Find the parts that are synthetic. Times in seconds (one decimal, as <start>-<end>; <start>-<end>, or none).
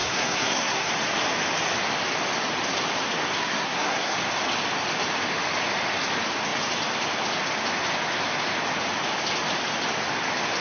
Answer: 0.0-0.9; 3.4-4.1